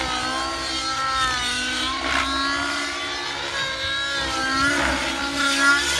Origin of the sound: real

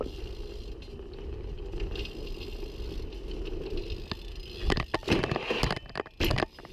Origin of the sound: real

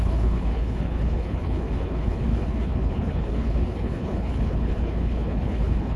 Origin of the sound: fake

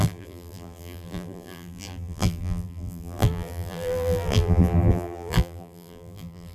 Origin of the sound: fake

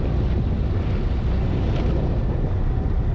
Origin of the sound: real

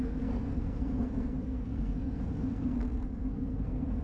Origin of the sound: fake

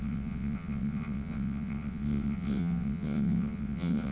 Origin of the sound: fake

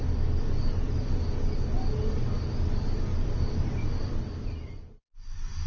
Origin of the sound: real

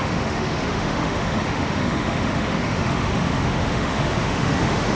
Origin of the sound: fake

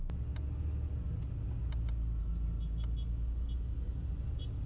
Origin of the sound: real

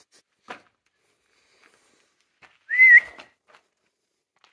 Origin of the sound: real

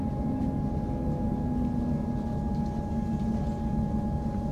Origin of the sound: real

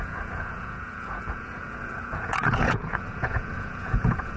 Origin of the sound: fake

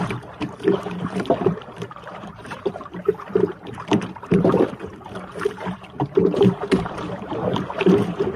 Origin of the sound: fake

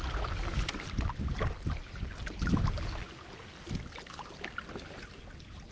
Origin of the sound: real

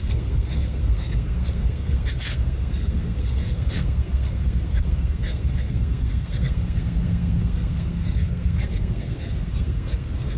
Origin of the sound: fake